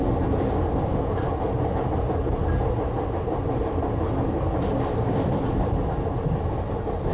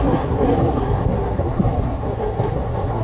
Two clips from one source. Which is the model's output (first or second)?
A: second